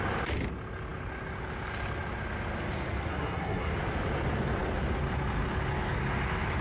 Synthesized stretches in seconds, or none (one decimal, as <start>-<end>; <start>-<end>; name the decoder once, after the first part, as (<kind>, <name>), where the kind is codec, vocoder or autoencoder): 3.1-3.7 (codec, SNAC)